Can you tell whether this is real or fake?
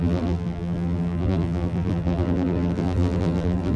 fake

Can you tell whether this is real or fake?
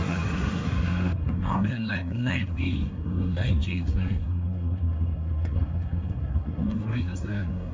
fake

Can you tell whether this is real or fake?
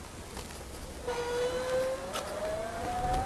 real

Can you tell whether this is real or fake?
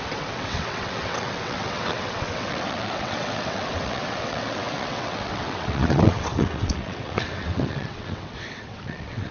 fake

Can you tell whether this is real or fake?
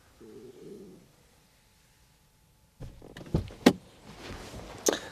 real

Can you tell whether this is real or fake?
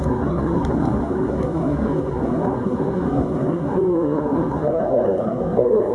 fake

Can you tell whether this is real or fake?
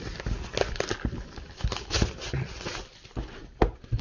real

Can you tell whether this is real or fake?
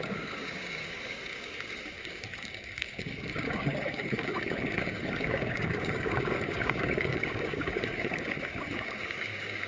fake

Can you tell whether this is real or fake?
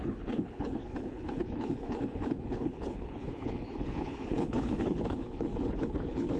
fake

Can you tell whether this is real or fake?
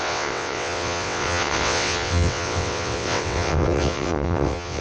fake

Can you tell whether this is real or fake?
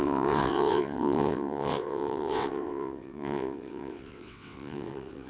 fake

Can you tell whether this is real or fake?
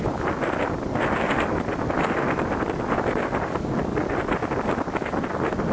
real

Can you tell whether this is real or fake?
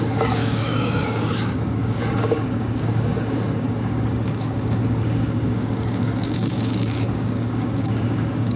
fake